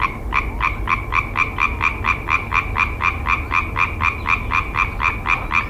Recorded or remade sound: recorded